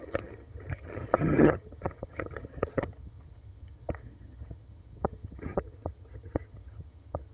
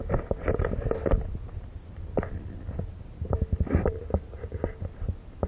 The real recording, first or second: second